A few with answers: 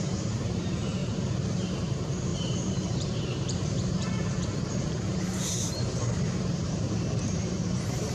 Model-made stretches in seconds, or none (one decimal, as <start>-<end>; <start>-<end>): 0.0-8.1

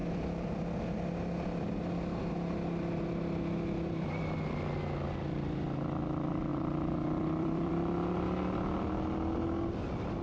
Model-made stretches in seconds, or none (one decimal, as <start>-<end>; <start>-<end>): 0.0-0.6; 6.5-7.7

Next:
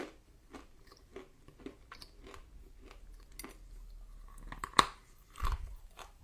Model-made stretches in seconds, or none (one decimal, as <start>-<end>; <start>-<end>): 0.0-1.1; 4.6-6.2

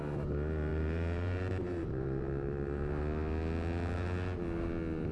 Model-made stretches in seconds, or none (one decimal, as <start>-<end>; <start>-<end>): 0.7-2.9

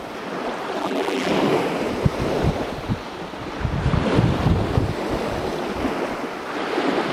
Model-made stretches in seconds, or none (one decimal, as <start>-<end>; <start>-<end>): 0.8-1.3

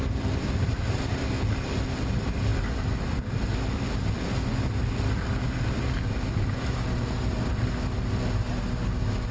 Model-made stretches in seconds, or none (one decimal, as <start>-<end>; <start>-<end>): 0.0-1.1

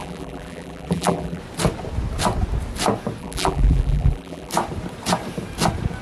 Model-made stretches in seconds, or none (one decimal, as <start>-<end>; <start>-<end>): 0.0-1.4; 3.2-4.5